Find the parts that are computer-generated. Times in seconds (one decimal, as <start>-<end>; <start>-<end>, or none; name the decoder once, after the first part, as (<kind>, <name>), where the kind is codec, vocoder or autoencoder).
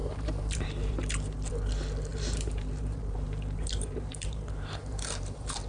0.0-1.5 (vocoder, BigVGAN v2); 2.1-5.7